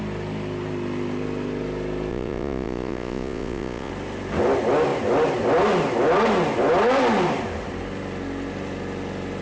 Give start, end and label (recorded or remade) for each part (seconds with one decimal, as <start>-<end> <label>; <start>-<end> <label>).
0.0-2.1 recorded; 2.1-3.9 remade; 3.9-9.4 recorded